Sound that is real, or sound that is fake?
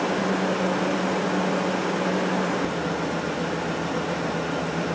real